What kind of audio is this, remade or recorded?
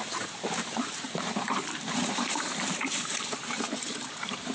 remade